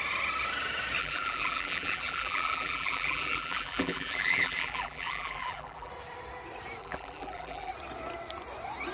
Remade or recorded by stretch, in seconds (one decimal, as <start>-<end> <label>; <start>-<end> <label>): 0.0-1.0 recorded; 1.0-5.9 remade; 5.9-6.8 recorded; 6.8-7.7 remade; 7.7-8.9 recorded